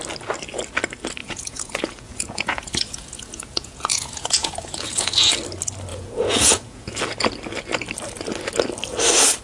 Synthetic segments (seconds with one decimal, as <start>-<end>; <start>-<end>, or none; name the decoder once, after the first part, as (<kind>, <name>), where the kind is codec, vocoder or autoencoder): 1.2-5.3 (vocoder, Vocos); 5.9-7.0

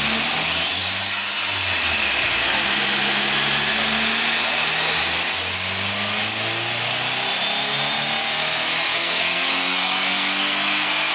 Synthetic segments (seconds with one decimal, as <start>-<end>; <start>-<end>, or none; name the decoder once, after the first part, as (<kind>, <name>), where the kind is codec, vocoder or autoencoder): 8.9-11.1 (codec, SNAC)

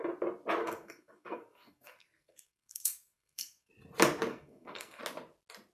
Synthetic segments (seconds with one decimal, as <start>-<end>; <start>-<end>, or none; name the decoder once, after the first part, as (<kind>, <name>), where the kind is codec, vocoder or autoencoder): 0.6-3.7 (codec, SNAC); 4.3-5.0